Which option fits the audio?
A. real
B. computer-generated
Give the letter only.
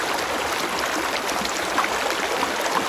A